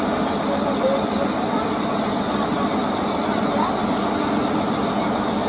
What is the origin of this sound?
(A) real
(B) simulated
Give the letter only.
A